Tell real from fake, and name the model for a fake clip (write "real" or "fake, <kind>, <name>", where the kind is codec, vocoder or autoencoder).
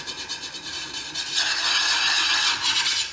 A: real